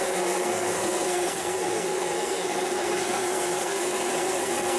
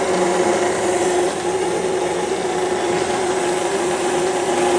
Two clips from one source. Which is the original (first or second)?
second